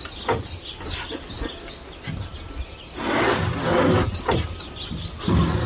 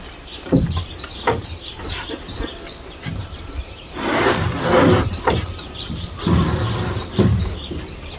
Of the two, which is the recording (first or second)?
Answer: first